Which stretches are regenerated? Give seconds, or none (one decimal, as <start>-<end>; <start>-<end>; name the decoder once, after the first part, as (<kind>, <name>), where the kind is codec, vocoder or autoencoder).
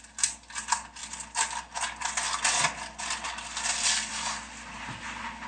none